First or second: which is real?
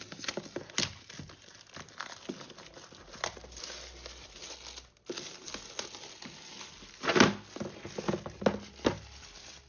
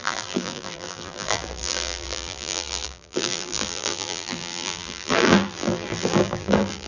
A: first